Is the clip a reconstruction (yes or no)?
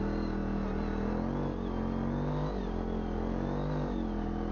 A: no